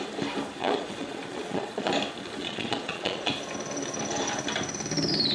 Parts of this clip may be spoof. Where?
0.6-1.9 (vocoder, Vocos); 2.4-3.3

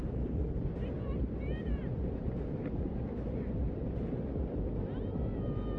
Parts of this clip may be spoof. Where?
1.8-3.8 (vocoder, BigVGAN v2)

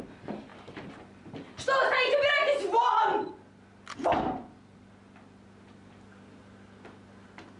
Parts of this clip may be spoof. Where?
0.5-1.5 (vocoder, BigVGAN v2)

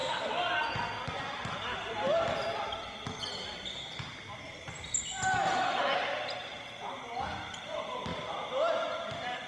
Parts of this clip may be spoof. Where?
5.1-6.5 (vocoder, BigVGAN v2); 8.1-9.5

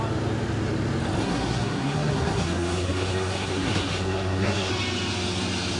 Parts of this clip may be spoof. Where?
1.2-4.7 (codec, SNAC)